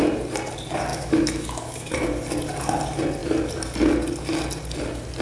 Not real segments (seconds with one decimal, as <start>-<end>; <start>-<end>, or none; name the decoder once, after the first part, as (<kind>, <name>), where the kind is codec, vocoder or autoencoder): 0.9-1.9 (autoencoder, DAC-VAE)

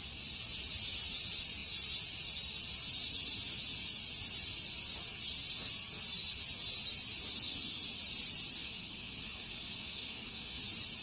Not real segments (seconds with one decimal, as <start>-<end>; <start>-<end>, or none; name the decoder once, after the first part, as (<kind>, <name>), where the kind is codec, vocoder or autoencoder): 8.6-10.6 (codec, DAC)

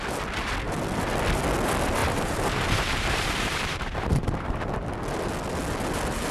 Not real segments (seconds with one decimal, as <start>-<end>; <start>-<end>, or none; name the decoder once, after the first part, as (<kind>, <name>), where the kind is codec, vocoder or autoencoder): 2.0-4.7 (vocoder, BigVGAN v2)

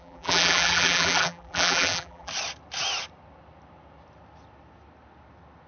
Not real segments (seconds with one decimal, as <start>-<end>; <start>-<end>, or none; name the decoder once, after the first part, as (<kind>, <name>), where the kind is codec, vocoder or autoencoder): 0.0-2.3 (vocoder, BigVGAN v2)

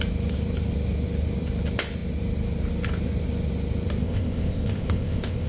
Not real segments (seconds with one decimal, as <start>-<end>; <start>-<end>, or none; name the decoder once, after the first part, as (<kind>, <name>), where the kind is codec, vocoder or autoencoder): 4.0-5.5 (codec, ZipCodec)

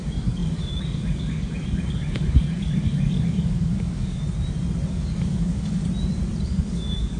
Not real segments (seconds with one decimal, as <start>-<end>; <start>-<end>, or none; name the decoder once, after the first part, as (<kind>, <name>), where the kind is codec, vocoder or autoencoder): 0.0-4.2 (codec, DAC); 4.9-5.8; 6.4-7.2

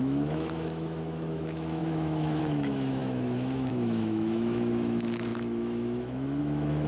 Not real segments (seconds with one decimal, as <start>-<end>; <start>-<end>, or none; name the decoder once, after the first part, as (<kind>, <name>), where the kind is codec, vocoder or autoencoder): 0.0-6.9 (autoencoder, DAC-VAE)